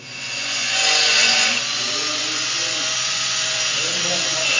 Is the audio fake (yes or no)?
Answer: yes